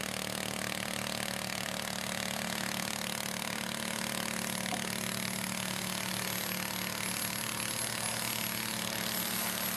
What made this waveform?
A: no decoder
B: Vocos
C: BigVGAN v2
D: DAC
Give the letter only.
A